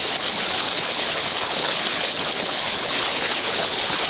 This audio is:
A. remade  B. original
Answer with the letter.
A